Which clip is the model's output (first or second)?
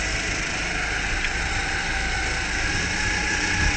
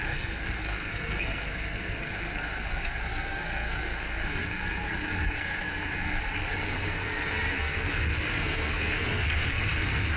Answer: second